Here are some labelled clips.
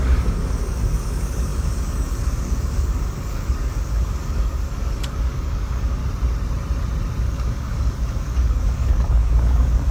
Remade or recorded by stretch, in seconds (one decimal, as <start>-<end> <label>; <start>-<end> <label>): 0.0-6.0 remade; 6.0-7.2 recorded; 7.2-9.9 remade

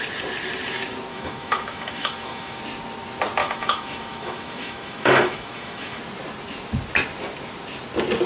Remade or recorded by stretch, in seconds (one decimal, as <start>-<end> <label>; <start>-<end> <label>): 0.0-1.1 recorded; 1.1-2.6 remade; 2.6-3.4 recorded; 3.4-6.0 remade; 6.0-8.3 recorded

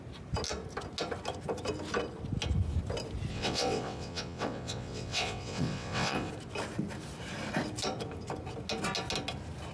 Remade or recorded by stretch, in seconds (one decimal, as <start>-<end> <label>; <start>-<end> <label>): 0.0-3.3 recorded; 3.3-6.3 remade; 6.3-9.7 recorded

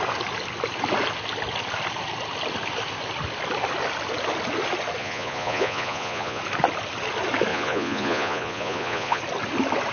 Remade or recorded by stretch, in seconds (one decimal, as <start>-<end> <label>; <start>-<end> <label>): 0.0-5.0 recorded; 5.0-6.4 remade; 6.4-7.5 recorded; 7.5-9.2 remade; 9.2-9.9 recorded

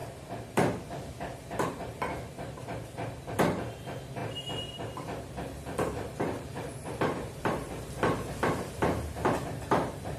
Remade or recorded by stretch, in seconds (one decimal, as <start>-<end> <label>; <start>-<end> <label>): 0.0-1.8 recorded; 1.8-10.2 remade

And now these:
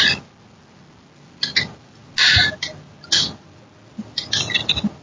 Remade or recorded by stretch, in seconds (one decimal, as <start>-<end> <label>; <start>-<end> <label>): 0.0-5.0 recorded